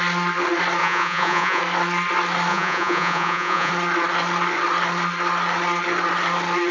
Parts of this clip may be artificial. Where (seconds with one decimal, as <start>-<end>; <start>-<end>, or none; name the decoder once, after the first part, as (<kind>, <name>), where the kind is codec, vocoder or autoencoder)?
0.8-1.6 (vocoder, Vocos); 2.5-3.7

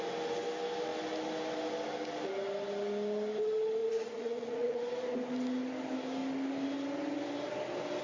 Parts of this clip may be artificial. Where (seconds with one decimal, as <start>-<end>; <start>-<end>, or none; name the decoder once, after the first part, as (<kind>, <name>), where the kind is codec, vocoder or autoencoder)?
3.8-4.8 (vocoder, Vocos)

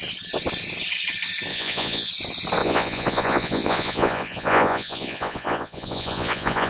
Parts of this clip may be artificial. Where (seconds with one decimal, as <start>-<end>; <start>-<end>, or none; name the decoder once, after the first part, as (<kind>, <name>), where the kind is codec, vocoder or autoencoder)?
1.5-2.1 (vocoder, Vocos); 2.6-6.7

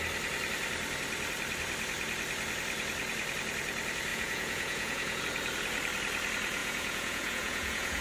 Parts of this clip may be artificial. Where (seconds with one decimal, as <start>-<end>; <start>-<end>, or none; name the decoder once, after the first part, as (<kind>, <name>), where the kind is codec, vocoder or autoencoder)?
4.1-5.2 (vocoder, Vocos); 6.6-8.0

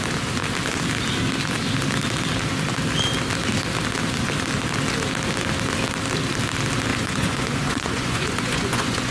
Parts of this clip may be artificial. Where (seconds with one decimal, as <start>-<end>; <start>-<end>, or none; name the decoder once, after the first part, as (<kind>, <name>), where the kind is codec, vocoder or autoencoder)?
6.9-9.1 (vocoder, Vocos)

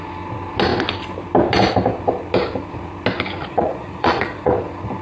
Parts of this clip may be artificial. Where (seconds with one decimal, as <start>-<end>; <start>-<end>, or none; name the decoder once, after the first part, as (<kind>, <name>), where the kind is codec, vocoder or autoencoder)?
3.4-4.5 (vocoder, Vocos)

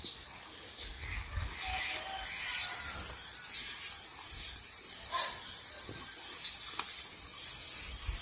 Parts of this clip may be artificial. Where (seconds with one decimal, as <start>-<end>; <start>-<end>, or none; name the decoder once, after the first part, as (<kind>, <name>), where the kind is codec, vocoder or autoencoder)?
none